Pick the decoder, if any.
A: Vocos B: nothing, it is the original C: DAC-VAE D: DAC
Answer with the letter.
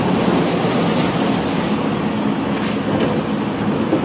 B